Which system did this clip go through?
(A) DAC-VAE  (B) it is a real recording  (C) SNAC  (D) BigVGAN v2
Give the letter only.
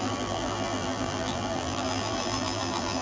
D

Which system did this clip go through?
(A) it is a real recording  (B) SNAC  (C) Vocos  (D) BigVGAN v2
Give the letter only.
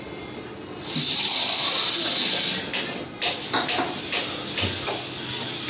A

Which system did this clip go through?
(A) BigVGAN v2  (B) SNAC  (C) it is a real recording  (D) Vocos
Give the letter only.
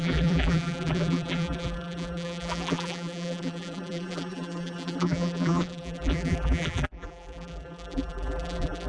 A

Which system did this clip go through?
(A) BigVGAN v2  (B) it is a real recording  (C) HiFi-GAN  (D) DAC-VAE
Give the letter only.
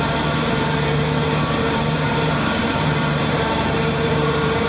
A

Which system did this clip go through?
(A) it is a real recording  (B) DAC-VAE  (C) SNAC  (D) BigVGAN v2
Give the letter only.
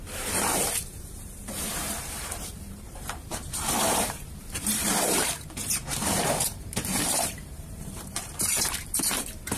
D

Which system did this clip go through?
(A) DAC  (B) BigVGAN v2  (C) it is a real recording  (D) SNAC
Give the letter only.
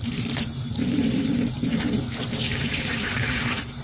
B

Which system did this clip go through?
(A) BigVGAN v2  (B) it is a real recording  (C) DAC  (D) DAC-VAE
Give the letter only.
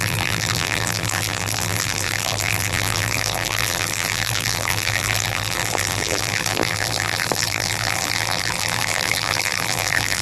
A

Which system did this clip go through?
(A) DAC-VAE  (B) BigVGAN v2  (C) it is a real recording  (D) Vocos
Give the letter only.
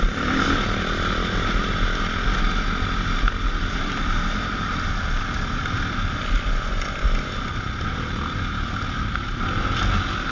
C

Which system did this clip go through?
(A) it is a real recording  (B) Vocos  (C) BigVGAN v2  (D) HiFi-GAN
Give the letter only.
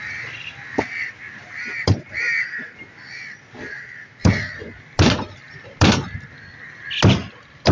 A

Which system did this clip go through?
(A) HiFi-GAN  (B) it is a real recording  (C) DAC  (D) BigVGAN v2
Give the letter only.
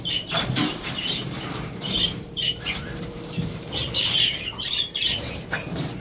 D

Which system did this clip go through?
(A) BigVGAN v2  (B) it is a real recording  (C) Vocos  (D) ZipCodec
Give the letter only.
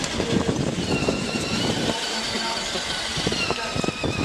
A